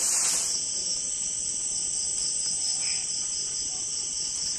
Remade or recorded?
recorded